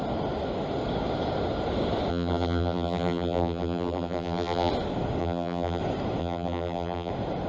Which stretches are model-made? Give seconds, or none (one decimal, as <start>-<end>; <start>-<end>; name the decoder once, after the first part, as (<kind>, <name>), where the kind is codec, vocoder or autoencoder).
2.1-4.7 (vocoder, BigVGAN v2); 5.2-5.8; 6.2-7.1